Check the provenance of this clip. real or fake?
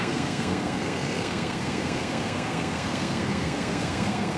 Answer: fake